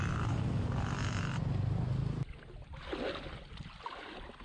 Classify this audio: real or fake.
real